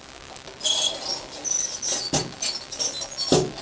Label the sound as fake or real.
real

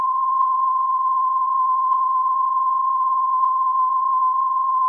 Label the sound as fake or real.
fake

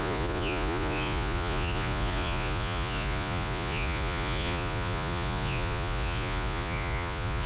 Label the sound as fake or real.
fake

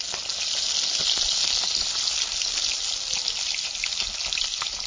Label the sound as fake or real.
real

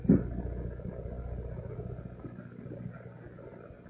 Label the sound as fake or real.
real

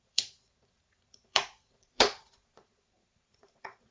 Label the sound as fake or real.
fake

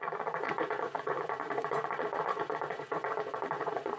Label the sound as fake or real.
fake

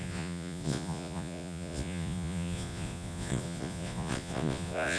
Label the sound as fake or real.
fake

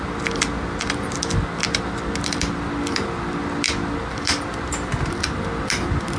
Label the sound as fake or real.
real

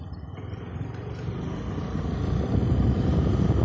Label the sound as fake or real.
real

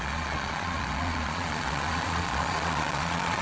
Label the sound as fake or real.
fake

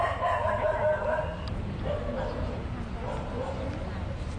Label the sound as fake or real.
real